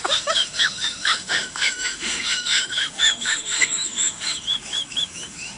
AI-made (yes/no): yes